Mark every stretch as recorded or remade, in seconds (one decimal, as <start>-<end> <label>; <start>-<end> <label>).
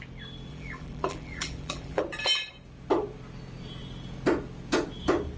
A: 0.0-0.5 recorded; 0.5-2.0 remade; 2.0-5.4 recorded